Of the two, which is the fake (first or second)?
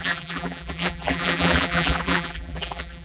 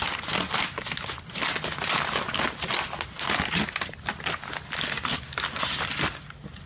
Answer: first